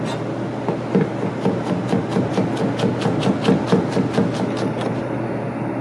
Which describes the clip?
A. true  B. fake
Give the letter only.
A